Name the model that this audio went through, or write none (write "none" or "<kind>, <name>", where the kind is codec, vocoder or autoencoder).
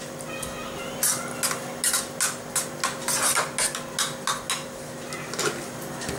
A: none